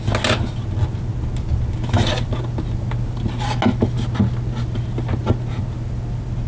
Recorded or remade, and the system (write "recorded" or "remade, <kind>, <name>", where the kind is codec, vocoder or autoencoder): recorded